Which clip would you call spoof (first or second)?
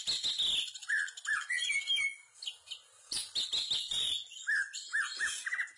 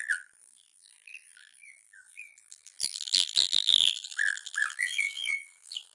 second